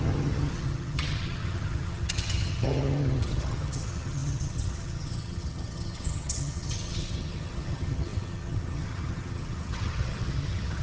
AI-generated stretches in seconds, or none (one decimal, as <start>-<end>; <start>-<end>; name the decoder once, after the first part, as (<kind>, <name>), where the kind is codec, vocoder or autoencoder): 0.0-10.8 (vocoder, HiFi-GAN)